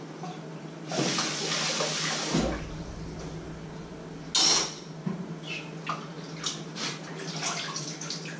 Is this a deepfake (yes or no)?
no